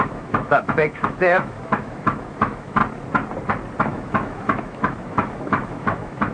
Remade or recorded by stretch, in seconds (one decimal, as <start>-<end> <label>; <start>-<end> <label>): 0.0-2.8 remade; 2.8-3.8 recorded; 3.8-6.3 remade